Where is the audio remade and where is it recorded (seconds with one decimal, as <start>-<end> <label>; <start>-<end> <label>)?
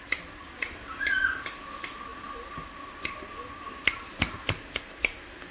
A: 0.0-5.5 recorded